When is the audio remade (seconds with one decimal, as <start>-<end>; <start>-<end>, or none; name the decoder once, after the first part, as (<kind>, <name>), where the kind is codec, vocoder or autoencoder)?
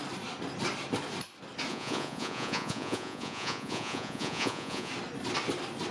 1.7-4.9 (vocoder, Vocos)